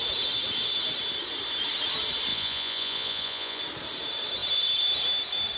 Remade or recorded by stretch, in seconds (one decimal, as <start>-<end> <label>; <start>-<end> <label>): 0.0-2.3 recorded; 2.3-3.6 remade; 3.6-5.6 recorded